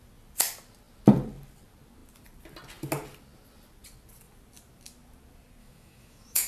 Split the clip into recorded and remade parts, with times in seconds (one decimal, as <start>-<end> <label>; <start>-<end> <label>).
0.0-5.6 recorded; 5.6-6.5 remade